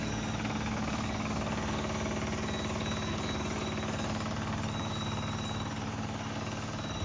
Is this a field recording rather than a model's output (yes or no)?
no